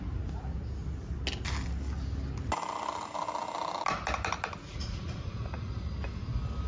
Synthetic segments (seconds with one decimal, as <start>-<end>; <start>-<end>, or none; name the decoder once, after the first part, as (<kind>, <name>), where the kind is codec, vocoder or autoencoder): 4.6-5.7 (vocoder, Vocos)